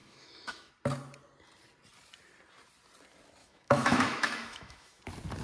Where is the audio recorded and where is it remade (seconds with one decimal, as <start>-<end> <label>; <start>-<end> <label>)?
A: 0.0-0.7 remade; 0.7-3.4 recorded; 3.4-5.0 remade; 5.0-5.4 recorded